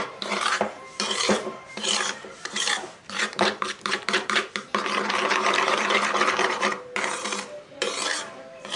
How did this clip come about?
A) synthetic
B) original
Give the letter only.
A